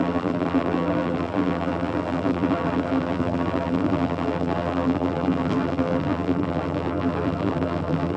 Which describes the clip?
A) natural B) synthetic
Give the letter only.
B